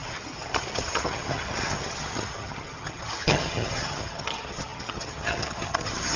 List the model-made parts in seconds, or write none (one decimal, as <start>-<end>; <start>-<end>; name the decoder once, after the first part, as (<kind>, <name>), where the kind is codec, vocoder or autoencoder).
0.0-6.2 (vocoder, HiFi-GAN)